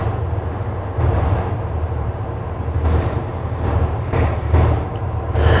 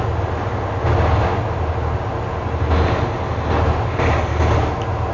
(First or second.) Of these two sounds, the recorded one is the second